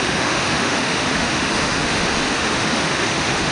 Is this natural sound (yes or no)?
no